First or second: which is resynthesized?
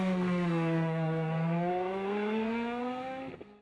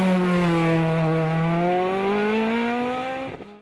first